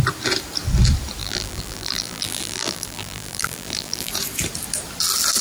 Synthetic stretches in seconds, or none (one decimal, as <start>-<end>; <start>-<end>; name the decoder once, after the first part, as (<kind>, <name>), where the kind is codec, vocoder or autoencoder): 1.2-4.1 (vocoder, BigVGAN v2)